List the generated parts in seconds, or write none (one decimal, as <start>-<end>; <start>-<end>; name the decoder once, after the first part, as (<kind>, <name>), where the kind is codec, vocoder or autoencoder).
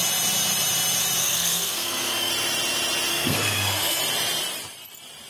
1.2-2.3 (codec, SNAC); 3.1-4.0